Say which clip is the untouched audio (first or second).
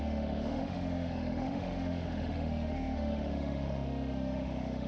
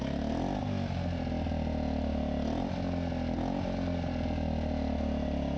second